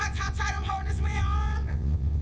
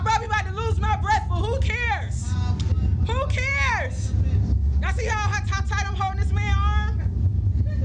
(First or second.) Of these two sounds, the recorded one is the second